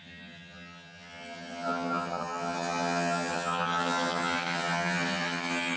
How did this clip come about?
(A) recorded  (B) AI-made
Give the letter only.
B